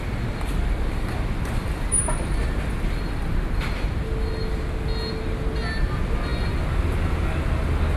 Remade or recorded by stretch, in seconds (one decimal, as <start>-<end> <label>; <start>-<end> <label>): 0.0-1.6 recorded; 1.6-3.3 remade; 3.3-8.0 recorded